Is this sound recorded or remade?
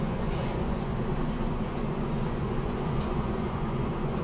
remade